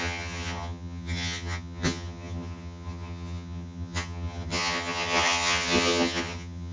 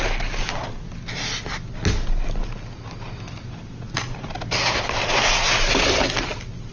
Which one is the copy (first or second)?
first